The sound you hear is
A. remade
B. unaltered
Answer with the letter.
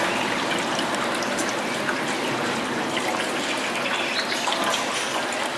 B